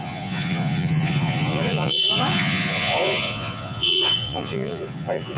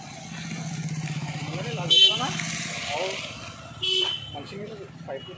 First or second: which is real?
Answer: second